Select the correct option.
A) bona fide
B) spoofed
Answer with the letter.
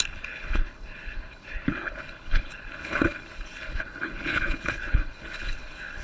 B